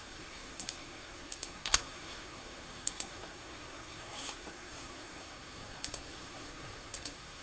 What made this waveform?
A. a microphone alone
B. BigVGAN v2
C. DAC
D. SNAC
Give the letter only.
D